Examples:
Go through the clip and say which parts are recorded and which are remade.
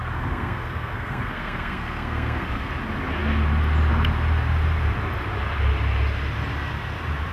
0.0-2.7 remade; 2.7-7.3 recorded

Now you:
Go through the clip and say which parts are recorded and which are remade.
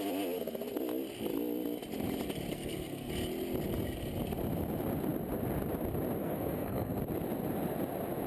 0.0-2.5 recorded; 2.5-3.1 remade; 3.1-6.2 recorded; 6.2-7.0 remade; 7.0-8.3 recorded